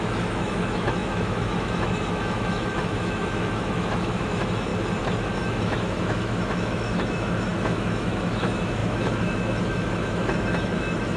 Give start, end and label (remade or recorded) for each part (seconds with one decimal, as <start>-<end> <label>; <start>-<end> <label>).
0.0-4.7 remade; 4.7-5.3 recorded; 5.3-11.2 remade